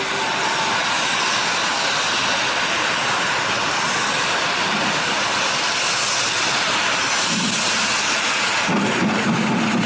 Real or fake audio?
real